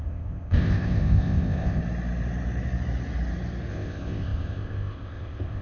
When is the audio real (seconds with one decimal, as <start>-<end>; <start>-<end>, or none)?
1.8-3.7